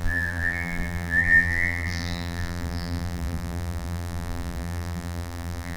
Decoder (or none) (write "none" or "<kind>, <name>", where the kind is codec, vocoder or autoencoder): vocoder, BigVGAN v2